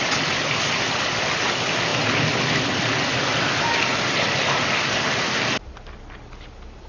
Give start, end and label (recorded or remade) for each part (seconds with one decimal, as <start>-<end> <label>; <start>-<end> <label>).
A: 0.0-6.9 recorded